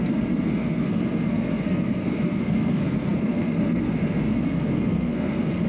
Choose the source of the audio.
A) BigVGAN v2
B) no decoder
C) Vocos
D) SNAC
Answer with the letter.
D